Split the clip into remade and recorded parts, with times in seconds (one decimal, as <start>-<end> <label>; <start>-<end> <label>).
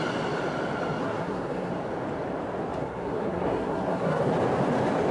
0.0-1.0 recorded; 1.0-1.7 remade; 1.7-2.8 recorded; 2.8-4.3 remade; 4.3-5.1 recorded